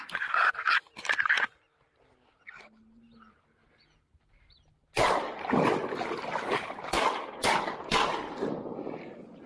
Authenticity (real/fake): real